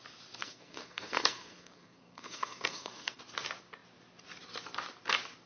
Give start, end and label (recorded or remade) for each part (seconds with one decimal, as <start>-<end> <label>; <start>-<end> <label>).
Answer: 0.0-0.4 recorded; 0.4-3.2 remade; 3.2-5.5 recorded